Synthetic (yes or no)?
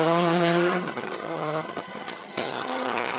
yes